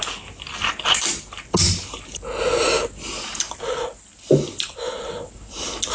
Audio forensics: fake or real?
real